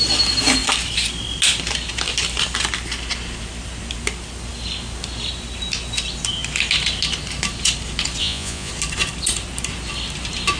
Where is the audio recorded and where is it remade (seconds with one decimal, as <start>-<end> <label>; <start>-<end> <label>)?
0.0-8.2 recorded; 8.2-8.7 remade; 8.7-10.6 recorded